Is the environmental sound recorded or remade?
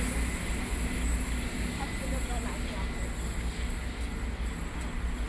recorded